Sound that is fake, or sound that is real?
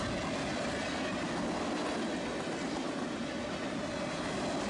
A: real